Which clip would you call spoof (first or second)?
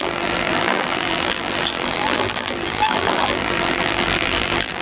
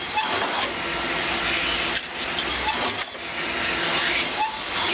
first